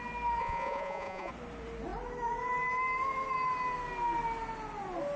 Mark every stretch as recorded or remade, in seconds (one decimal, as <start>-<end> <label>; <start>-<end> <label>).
0.0-0.4 recorded; 0.4-1.3 remade; 1.3-5.2 recorded